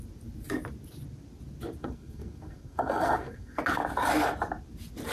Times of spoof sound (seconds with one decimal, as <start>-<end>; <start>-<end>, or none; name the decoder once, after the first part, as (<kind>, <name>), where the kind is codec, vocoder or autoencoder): 1.8-3.6 (codec, SNAC)

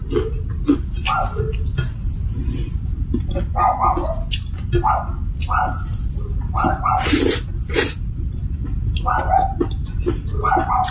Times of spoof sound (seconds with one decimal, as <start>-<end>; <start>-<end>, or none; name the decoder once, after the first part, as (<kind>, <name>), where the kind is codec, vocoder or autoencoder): none

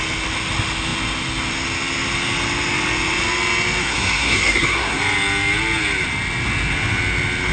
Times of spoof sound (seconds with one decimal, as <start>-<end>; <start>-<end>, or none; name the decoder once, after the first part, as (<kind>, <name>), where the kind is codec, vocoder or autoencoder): 3.8-5.0 (codec, SNAC)

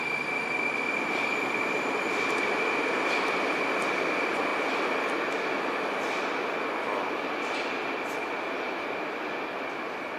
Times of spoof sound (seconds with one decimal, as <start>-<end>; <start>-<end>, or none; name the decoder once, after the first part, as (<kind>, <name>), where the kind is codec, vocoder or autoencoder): none

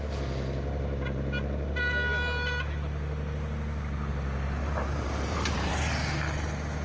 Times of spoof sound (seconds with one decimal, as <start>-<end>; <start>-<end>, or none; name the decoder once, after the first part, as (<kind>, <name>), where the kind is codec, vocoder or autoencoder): 4.6-5.7 (vocoder, BigVGAN v2)